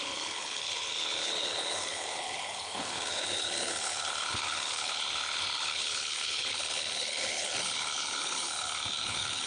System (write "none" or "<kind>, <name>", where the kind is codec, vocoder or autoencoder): codec, HILCodec